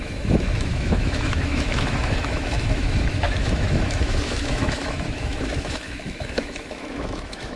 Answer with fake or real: fake